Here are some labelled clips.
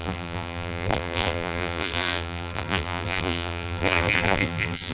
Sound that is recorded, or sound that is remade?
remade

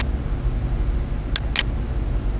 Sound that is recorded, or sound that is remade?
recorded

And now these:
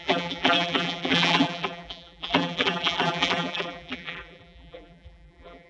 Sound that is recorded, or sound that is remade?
remade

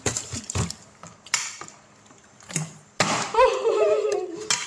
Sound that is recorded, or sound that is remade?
recorded